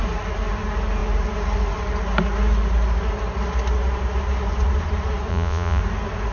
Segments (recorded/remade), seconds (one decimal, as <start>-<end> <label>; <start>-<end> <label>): 0.0-5.3 recorded; 5.3-5.8 remade; 5.8-6.3 recorded